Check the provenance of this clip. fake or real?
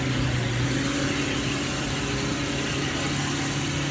real